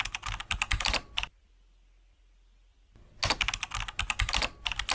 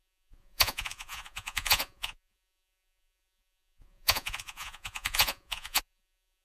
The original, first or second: first